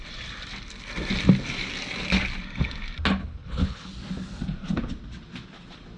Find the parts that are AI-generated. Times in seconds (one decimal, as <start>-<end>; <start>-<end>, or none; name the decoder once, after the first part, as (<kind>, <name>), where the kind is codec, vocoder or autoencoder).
3.2-3.9 (codec, HILCodec)